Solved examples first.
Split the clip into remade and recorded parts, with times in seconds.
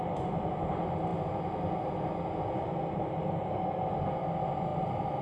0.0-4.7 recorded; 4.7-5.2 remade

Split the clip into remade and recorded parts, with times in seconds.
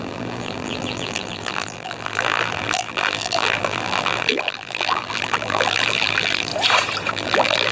0.0-6.5 remade; 6.5-7.1 recorded; 7.1-7.7 remade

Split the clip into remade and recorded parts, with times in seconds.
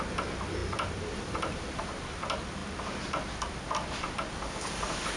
0.0-0.6 recorded; 0.6-1.9 remade; 1.9-5.2 recorded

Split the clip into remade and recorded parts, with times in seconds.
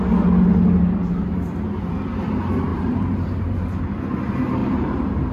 0.0-2.7 recorded; 2.7-3.7 remade; 3.7-4.6 recorded; 4.6-5.3 remade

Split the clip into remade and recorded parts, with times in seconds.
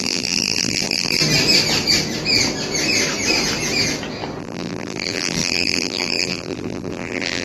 0.0-1.2 remade; 1.2-4.4 recorded; 4.4-7.4 remade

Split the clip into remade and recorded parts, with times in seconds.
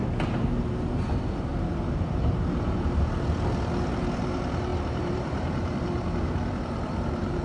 0.0-0.9 recorded; 0.9-1.5 remade; 1.5-3.7 recorded; 3.7-7.4 remade